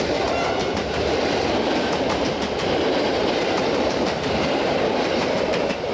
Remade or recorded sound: remade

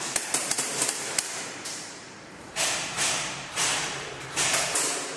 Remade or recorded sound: remade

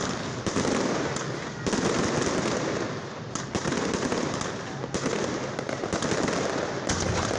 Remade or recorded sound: recorded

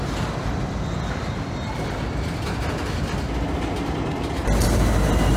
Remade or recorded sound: recorded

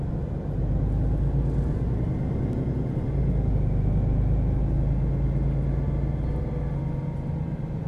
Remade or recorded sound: recorded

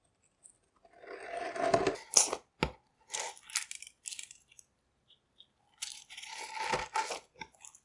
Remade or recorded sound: recorded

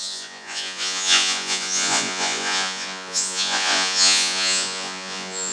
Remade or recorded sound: remade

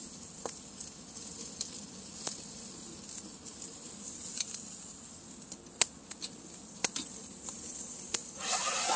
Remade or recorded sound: recorded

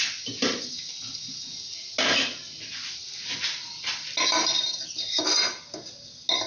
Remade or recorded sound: recorded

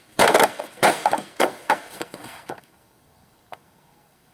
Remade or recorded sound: remade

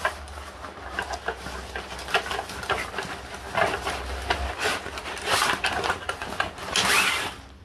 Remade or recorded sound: recorded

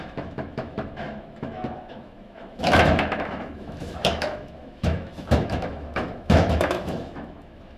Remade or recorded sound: remade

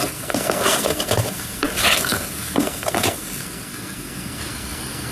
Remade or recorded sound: remade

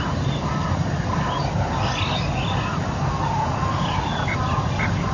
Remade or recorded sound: recorded